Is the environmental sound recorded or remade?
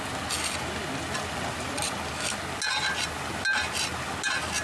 recorded